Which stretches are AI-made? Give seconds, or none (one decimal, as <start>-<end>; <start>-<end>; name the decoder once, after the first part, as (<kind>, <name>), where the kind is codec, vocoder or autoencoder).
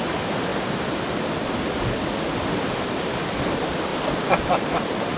0.0-0.5 (vocoder, BigVGAN v2); 3.0-3.9; 4.5-5.2